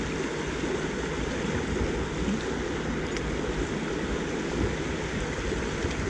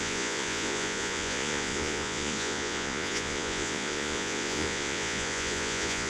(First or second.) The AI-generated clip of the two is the second